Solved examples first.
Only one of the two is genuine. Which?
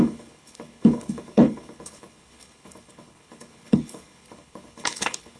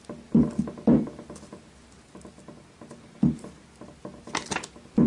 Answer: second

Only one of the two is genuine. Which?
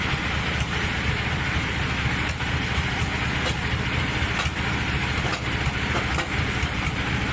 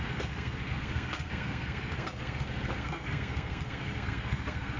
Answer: first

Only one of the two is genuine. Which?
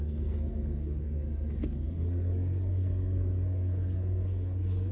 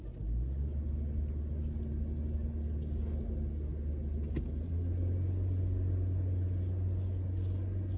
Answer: second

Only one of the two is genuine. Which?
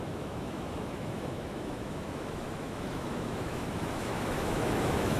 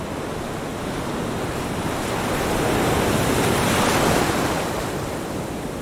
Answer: second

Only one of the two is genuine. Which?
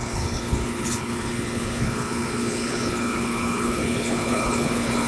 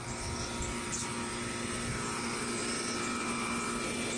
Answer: second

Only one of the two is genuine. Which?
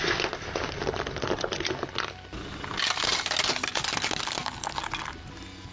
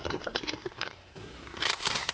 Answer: first